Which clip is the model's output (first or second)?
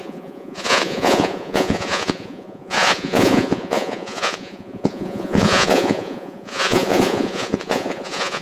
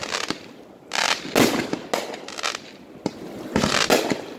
first